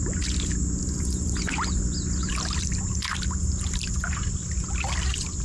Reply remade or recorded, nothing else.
recorded